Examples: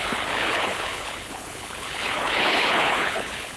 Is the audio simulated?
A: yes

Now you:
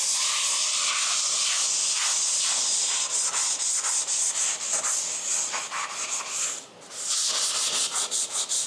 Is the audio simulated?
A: no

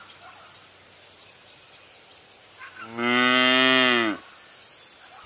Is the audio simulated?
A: no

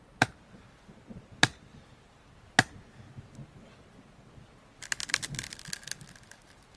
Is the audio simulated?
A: no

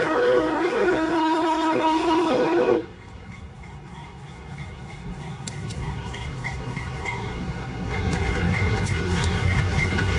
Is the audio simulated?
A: yes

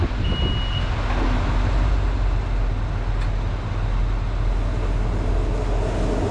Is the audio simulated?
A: no